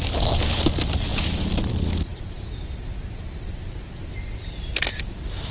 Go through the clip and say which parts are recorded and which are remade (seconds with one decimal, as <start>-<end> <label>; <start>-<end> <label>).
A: 0.0-5.5 recorded